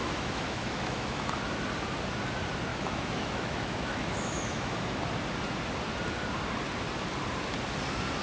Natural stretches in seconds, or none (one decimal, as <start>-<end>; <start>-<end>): 1.3-2.7; 5.0-8.2